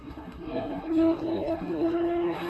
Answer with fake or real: fake